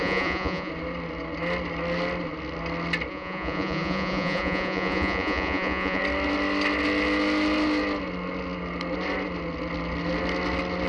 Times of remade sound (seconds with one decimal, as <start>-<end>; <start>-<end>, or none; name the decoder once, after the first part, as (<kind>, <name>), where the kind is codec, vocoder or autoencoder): 0.0-0.7 (vocoder, Vocos); 3.1-6.0